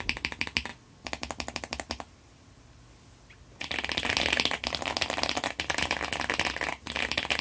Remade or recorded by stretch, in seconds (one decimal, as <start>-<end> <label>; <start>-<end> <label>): 0.0-7.4 recorded